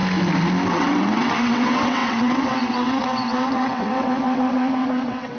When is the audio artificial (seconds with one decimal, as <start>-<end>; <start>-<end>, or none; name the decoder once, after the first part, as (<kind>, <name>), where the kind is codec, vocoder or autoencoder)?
0.7-5.4 (vocoder, WaveNeXt)